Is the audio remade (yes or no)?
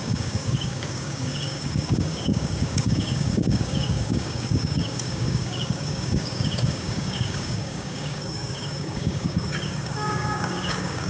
yes